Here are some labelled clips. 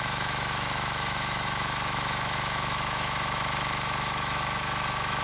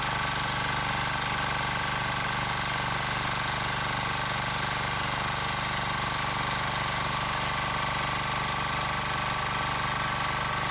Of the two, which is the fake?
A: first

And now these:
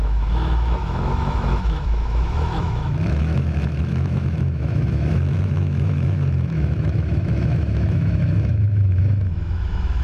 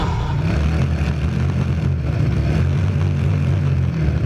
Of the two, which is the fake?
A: first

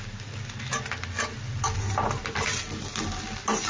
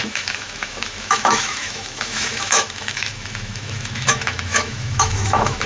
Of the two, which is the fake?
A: second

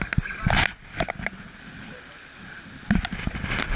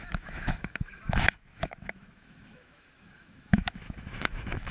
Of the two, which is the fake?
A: second